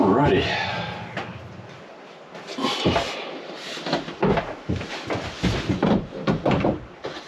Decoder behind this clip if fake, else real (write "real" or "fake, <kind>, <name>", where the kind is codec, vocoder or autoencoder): real